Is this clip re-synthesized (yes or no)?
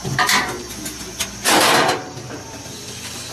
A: yes